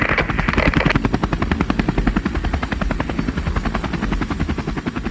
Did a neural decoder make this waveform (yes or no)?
no